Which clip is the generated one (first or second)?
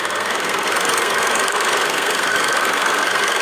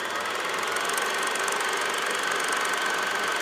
first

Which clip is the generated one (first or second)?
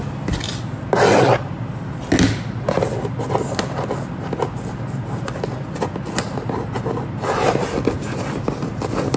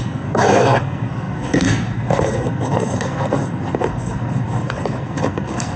second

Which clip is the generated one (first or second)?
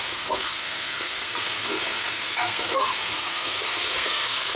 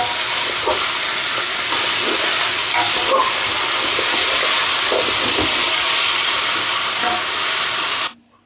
first